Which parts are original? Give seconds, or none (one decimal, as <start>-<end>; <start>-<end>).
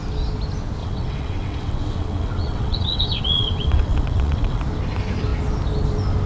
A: 0.0-0.8; 4.6-6.3